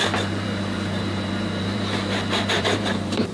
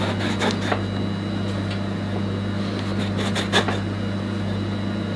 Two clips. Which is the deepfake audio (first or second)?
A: first